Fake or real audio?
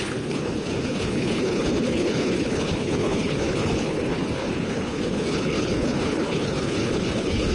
fake